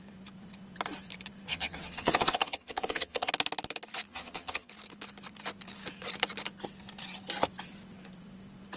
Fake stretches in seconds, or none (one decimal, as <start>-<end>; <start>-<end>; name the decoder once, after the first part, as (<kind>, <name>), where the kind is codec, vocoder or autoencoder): 1.5-3.3 (vocoder, HiFi-GAN); 4.1-4.7

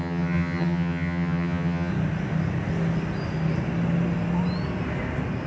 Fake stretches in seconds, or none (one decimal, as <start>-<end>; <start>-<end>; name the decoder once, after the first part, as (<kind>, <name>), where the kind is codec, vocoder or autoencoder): 0.0-1.9 (vocoder, HiFi-GAN)